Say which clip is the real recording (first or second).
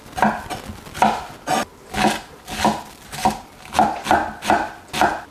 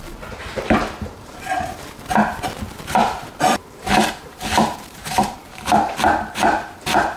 first